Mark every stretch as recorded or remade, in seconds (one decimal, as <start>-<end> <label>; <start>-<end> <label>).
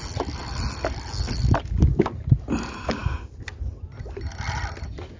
0.0-5.2 recorded